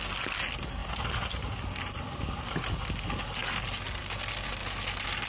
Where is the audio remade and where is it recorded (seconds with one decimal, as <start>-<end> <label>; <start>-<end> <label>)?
0.0-5.3 recorded